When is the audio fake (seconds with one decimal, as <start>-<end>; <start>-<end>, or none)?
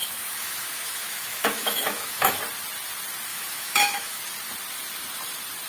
0.0-2.4; 3.3-4.2